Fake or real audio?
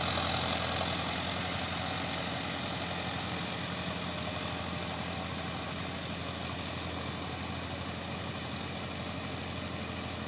real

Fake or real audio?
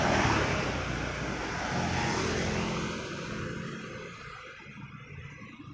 real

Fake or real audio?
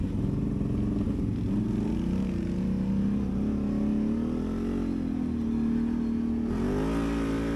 real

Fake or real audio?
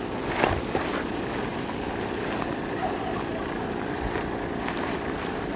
real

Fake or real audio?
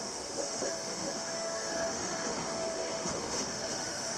fake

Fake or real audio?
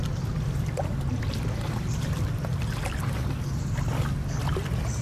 real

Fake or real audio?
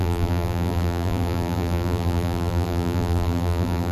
fake